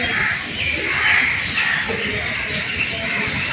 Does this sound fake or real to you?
real